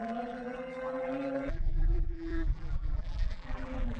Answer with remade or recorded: remade